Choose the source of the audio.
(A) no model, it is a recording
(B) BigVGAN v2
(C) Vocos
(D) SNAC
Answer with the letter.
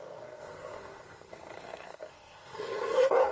D